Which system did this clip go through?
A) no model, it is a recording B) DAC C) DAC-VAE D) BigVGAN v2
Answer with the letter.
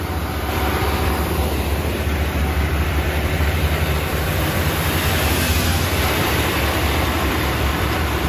D